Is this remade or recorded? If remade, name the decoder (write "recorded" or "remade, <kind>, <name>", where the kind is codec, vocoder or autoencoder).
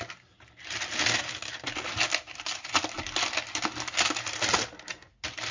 recorded